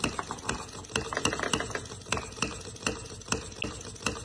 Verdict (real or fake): real